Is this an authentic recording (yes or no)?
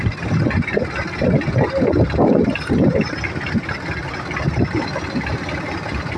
yes